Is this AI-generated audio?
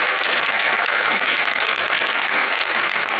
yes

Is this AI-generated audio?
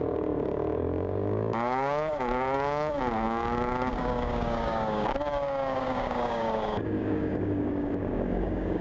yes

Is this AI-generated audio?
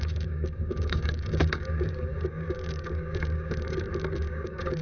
yes